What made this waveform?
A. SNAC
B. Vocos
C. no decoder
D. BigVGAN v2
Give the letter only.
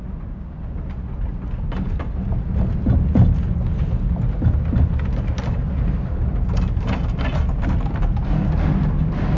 C